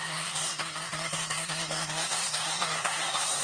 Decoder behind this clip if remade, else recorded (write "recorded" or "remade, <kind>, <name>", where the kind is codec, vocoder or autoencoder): remade, codec, SNAC